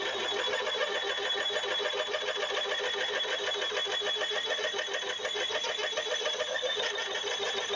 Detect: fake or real real